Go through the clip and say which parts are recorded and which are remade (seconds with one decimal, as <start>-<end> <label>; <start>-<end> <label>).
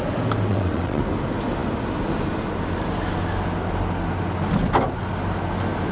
0.0-0.5 recorded; 0.5-1.0 remade; 1.0-5.9 recorded